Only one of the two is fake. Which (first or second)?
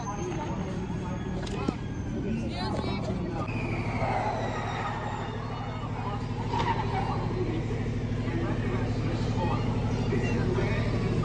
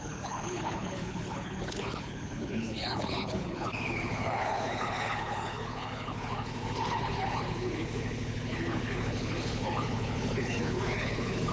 second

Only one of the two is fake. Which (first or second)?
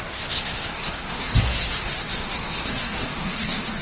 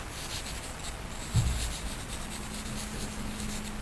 first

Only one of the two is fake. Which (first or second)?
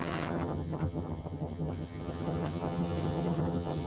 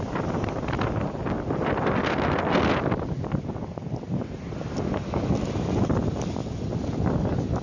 first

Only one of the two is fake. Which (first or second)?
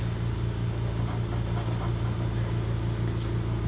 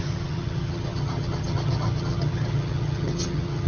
second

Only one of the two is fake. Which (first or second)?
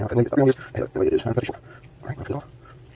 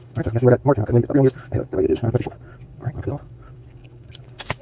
second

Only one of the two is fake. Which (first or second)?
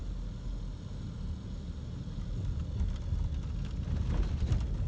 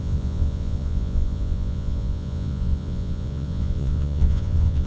second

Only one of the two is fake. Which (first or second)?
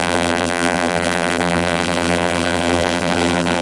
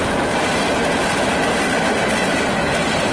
first